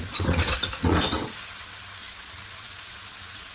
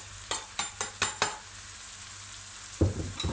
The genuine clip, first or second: second